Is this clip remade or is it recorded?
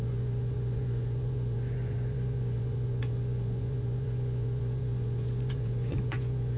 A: remade